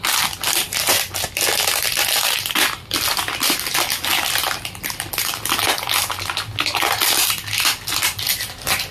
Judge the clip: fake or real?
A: real